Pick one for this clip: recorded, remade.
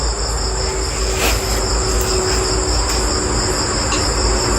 recorded